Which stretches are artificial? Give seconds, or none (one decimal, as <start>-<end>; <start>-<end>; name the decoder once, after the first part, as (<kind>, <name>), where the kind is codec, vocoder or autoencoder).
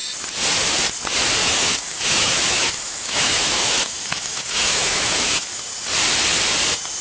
1.4-5.6 (autoencoder, DAC-VAE)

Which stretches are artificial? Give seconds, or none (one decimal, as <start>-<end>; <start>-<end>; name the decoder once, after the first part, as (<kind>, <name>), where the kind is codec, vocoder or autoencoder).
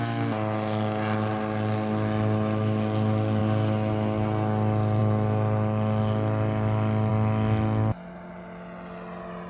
none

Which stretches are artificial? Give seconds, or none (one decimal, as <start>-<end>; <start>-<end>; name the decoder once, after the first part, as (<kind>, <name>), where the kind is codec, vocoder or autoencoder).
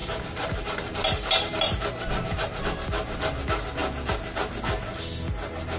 0.0-2.6 (vocoder, BigVGAN v2)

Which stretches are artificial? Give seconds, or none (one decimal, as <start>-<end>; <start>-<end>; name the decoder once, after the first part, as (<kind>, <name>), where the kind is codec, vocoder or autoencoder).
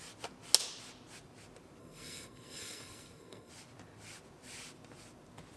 1.8-3.5 (codec, SNAC)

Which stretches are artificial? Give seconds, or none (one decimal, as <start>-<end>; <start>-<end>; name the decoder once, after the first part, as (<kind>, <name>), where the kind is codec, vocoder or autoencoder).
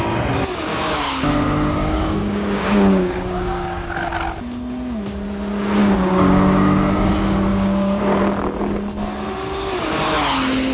0.7-3.9 (codec, DAC); 5.8-7.1; 7.5-8.1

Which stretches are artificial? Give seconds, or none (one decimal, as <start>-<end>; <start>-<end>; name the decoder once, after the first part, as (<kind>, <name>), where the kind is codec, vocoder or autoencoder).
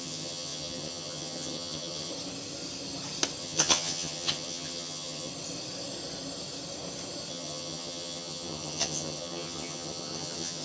0.0-2.1 (vocoder, HiFi-GAN); 3.4-5.3; 7.3-10.6